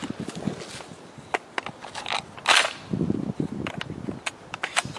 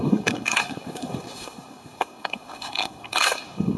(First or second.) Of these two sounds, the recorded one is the first